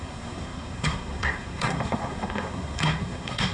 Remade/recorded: remade